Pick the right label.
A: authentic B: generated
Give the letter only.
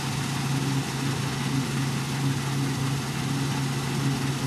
A